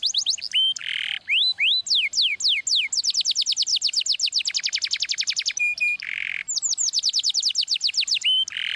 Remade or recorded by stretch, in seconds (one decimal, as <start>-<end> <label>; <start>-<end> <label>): 0.0-8.8 recorded